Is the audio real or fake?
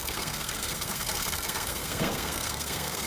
fake